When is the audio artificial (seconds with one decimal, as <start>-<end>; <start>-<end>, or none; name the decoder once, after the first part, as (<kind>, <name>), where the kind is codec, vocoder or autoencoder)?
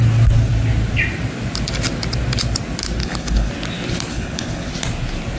3.0-3.5 (codec, HILCodec); 4.1-4.7